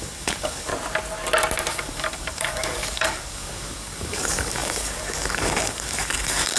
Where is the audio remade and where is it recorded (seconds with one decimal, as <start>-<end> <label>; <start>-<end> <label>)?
0.0-0.7 remade; 0.7-1.7 recorded; 1.7-6.6 remade